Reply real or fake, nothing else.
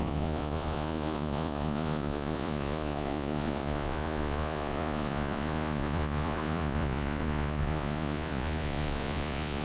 fake